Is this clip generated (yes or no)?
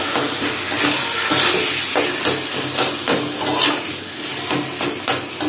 no